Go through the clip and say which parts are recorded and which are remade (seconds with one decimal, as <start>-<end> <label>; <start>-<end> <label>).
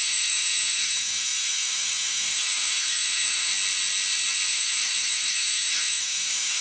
0.0-3.5 remade; 3.5-4.5 recorded; 4.5-6.6 remade